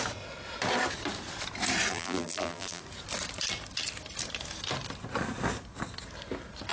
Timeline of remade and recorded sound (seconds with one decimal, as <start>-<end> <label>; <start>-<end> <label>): 0.0-1.9 recorded; 1.9-2.8 remade; 2.8-6.7 recorded